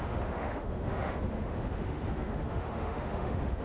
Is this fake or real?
fake